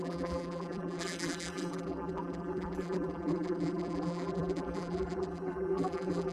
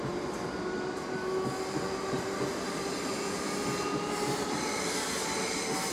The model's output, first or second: first